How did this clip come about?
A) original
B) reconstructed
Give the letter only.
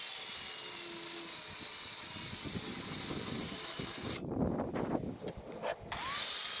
A